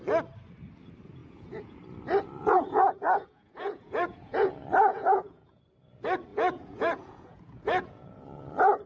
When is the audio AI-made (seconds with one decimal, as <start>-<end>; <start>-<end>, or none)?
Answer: 1.2-1.8; 2.4-4.5; 4.9-5.6; 6.3-8.4